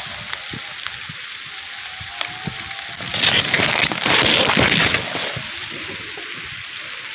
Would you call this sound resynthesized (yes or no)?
no